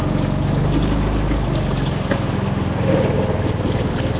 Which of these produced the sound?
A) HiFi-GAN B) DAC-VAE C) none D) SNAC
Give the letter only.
C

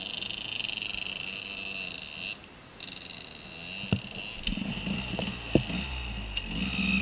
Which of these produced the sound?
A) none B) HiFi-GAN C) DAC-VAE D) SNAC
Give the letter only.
A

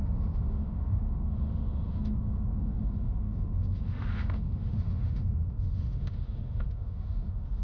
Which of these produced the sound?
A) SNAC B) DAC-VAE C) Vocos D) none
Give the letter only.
B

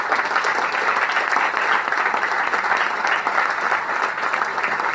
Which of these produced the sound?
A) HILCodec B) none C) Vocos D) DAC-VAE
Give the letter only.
B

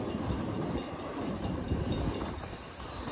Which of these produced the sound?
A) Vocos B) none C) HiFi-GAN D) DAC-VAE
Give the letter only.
B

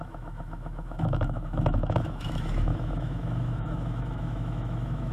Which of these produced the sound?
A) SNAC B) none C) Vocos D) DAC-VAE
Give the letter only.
D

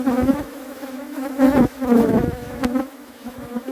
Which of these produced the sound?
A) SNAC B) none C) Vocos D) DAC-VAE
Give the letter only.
D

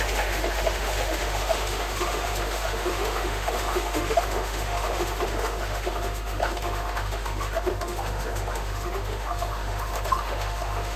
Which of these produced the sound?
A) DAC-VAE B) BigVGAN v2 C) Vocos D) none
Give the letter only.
A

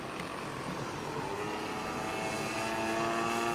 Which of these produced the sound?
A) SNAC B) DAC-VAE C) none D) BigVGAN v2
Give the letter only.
C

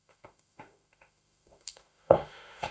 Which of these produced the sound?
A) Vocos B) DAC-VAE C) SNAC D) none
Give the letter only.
B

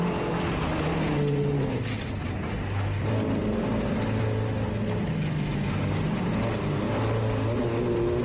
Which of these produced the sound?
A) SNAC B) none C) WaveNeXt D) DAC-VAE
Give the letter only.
B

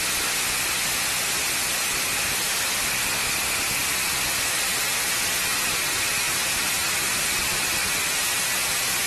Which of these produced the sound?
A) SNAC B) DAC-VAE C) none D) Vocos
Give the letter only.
C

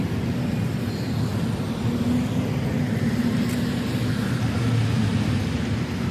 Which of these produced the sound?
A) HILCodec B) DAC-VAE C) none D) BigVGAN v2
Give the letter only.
C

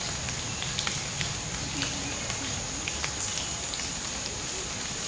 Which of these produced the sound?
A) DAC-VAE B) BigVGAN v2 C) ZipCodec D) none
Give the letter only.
D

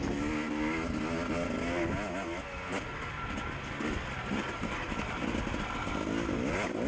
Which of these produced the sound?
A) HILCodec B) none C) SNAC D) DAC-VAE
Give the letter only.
B